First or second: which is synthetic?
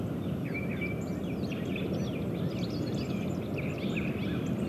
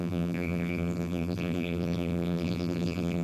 second